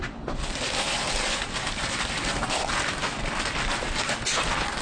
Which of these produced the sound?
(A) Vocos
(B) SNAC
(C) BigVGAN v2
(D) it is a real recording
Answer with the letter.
D